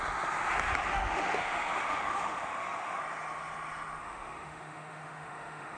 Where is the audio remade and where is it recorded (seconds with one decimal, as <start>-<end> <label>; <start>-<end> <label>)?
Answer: 0.0-0.9 recorded; 0.9-3.0 remade; 3.0-4.0 recorded; 4.0-5.8 remade

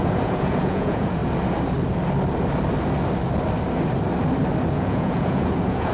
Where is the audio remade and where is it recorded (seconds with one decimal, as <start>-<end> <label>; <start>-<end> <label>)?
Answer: 0.0-1.2 remade; 1.2-4.7 recorded; 4.7-5.9 remade

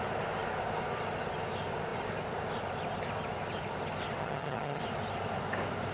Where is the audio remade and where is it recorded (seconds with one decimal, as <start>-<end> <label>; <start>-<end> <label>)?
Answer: 0.0-4.2 recorded; 4.2-4.8 remade; 4.8-5.9 recorded